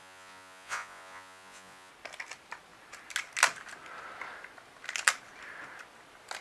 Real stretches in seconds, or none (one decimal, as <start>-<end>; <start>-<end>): 1.9-6.4